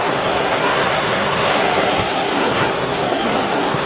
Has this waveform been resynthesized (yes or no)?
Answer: yes